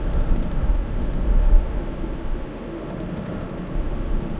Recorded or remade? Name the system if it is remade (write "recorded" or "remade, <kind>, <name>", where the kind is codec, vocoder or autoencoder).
remade, autoencoder, DAC-VAE